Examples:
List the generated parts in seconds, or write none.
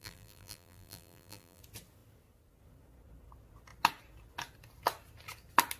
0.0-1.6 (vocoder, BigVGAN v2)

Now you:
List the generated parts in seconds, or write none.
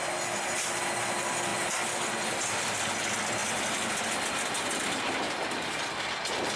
none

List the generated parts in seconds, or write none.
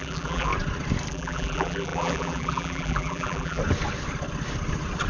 0.0-0.5 (vocoder, BigVGAN v2); 1.1-3.6